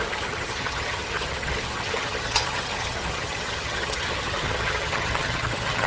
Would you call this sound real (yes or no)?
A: no